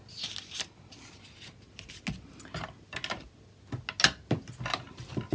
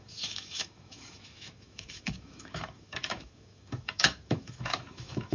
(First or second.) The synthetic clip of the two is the second